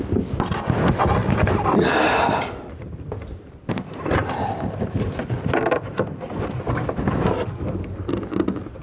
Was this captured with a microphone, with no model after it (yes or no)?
yes